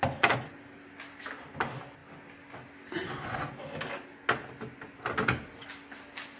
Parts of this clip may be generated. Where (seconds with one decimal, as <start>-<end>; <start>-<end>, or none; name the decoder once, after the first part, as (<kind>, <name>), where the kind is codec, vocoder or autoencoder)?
none